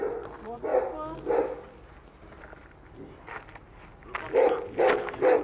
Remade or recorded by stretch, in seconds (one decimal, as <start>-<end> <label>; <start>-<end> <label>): 0.0-5.4 recorded

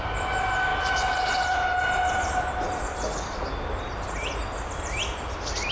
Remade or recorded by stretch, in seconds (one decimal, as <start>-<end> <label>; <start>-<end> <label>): 0.0-5.7 recorded

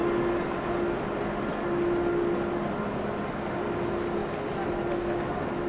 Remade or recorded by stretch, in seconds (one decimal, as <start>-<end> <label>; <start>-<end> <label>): 0.0-5.7 recorded

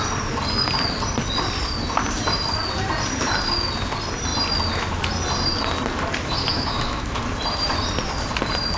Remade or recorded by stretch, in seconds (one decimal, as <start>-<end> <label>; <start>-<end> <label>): 0.0-6.4 recorded; 6.4-7.2 remade; 7.2-8.8 recorded

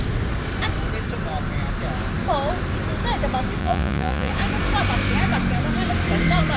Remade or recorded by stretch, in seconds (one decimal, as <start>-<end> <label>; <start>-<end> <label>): 0.0-3.6 recorded; 3.6-4.3 remade; 4.3-6.6 recorded